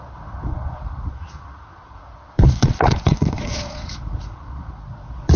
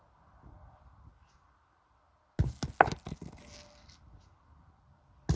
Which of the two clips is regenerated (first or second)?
first